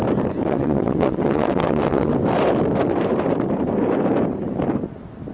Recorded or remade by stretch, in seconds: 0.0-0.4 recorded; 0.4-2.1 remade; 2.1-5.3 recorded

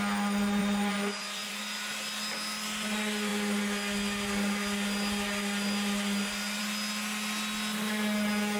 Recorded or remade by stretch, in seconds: 0.0-0.6 recorded; 0.6-1.6 remade; 1.6-8.6 recorded

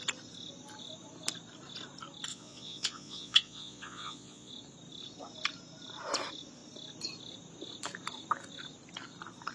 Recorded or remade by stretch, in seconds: 0.0-2.3 recorded; 2.3-4.5 remade; 4.5-9.5 recorded

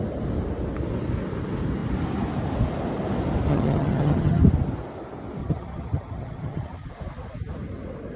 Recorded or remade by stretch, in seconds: 0.0-3.5 recorded; 3.5-4.4 remade; 4.4-5.4 recorded; 5.4-6.9 remade; 6.9-8.2 recorded

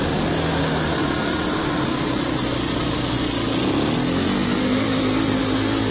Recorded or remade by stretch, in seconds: 0.0-1.0 recorded; 1.0-2.4 remade; 2.4-4.4 recorded; 4.4-5.9 remade

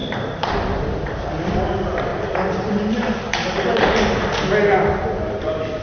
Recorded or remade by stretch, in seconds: 0.0-1.3 remade; 1.3-2.1 recorded; 2.1-4.3 remade; 4.3-5.8 recorded

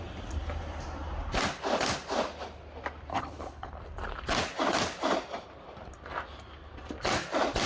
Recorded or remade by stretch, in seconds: 0.0-3.1 recorded; 3.1-3.7 remade; 3.7-7.7 recorded